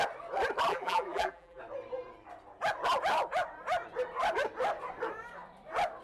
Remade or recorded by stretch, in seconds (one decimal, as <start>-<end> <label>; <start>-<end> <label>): 0.0-0.7 recorded; 0.7-1.6 remade; 1.6-6.0 recorded